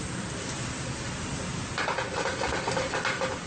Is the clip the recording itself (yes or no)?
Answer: yes